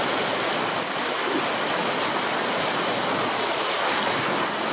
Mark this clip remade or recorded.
recorded